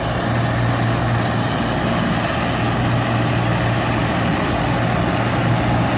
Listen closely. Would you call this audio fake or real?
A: real